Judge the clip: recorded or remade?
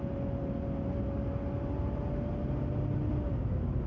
recorded